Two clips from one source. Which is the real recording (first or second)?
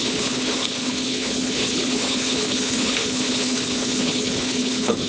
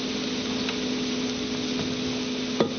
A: second